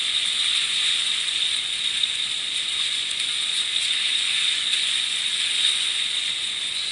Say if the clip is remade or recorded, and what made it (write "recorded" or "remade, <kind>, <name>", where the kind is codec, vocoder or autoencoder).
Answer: remade, vocoder, Vocos